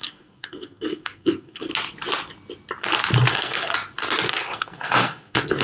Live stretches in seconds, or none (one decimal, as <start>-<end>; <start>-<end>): 1.7-3.3; 3.7-4.3